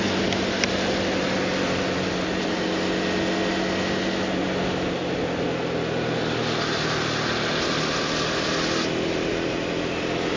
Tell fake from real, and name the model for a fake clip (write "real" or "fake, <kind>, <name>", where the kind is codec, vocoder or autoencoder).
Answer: real